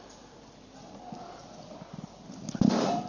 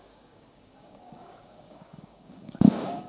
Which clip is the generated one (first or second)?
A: second